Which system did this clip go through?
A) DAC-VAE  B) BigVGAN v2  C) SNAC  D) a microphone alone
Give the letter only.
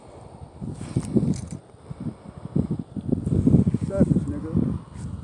D